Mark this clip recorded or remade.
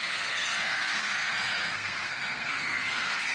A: remade